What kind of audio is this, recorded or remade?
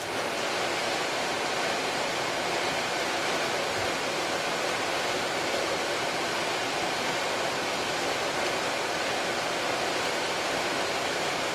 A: remade